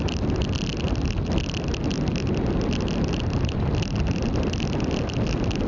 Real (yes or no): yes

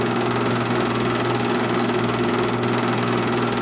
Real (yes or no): yes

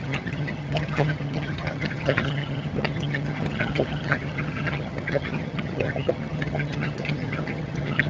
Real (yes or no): no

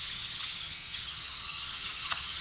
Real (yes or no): no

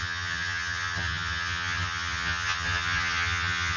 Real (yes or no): no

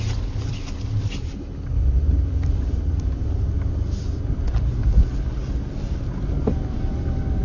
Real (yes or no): yes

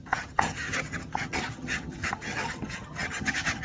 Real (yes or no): no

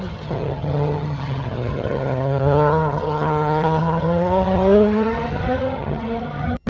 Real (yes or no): no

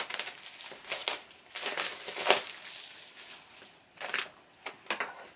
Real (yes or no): yes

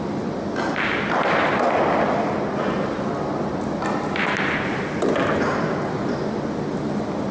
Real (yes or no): yes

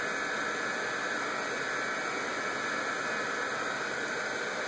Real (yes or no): yes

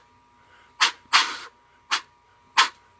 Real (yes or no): yes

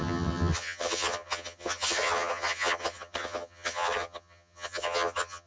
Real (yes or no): no